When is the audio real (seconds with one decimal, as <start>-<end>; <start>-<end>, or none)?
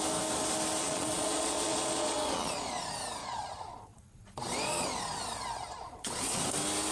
0.0-0.8; 2.8-3.2; 5.0-5.7; 6.4-6.9